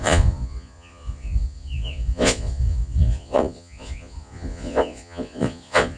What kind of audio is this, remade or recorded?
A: remade